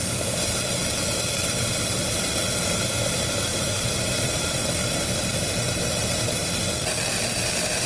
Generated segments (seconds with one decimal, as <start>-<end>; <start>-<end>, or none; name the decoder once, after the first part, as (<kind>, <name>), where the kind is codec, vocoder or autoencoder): 3.5-6.5 (vocoder, BigVGAN v2)

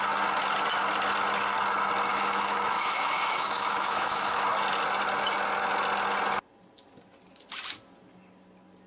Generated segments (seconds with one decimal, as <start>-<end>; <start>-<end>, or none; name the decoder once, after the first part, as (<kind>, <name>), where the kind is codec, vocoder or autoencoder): 2.1-4.4 (autoencoder, DAC-VAE)

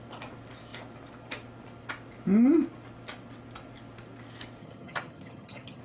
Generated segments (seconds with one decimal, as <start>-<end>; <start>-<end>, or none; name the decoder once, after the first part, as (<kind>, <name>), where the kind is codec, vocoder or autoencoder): 4.6-5.8 (vocoder, HiFi-GAN)

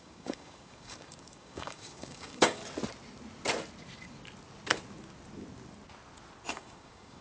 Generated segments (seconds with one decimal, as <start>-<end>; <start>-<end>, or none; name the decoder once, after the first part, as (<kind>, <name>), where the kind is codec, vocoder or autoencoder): 0.0-2.6 (codec, DAC); 6.5-7.2

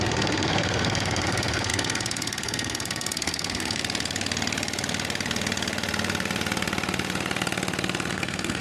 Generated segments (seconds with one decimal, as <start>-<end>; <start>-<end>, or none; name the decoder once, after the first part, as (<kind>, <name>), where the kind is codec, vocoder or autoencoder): 0.0-3.8 (codec, SNAC); 8.1-8.6

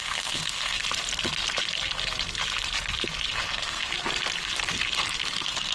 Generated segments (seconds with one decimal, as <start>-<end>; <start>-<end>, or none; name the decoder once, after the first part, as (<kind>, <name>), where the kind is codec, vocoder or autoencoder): 0.0-0.8 (codec, SNAC); 3.4-3.9; 5.3-5.7

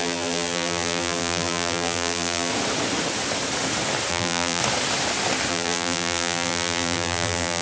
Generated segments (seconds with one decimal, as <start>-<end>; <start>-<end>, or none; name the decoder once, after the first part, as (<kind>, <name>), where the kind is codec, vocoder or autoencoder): 0.0-2.5 (vocoder, BigVGAN v2); 4.1-4.6; 5.5-7.6